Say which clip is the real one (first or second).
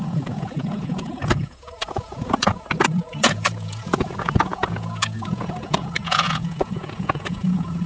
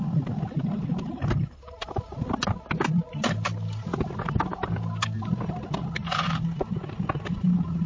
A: second